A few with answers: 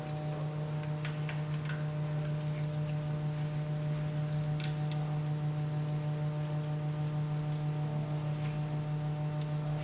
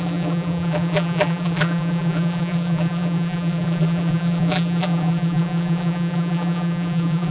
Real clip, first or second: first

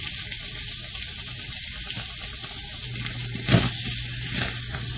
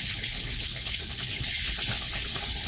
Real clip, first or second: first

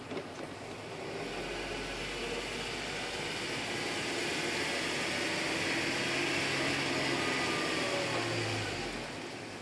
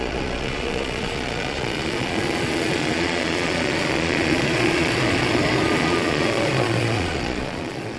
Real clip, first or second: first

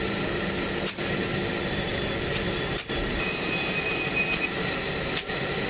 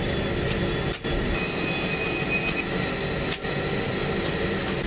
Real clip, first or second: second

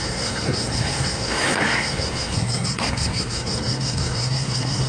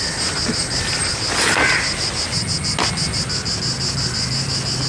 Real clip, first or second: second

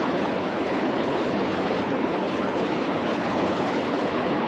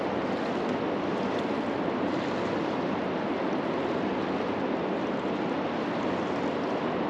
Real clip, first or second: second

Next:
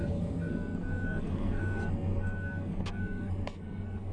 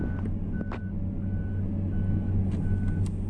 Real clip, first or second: second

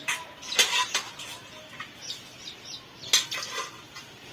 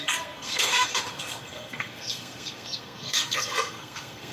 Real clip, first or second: first